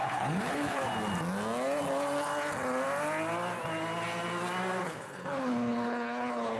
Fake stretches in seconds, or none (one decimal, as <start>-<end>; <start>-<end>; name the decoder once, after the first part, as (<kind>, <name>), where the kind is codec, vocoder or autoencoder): 0.0-0.8 (codec, HILCodec); 4.8-6.6